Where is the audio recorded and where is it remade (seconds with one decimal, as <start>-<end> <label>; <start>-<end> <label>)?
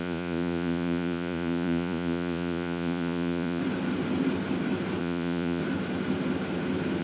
0.0-3.6 remade; 3.6-5.0 recorded; 5.0-5.6 remade; 5.6-7.0 recorded